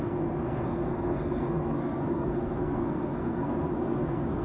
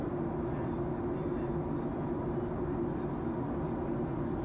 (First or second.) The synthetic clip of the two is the first